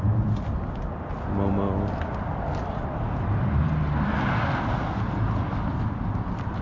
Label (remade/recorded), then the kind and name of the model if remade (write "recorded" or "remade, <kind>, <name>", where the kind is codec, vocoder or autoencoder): recorded